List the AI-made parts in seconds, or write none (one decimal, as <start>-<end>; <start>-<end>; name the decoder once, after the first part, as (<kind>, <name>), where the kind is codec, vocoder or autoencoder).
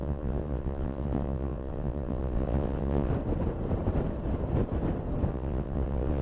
0.0-3.1 (vocoder, WaveNeXt); 5.3-6.2